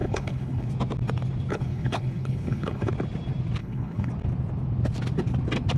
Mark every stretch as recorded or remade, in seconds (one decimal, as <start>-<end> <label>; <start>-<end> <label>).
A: 0.0-0.7 remade; 0.7-1.5 recorded; 1.5-2.9 remade; 2.9-3.6 recorded; 3.6-4.1 remade; 4.1-5.8 recorded